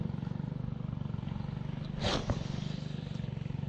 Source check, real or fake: real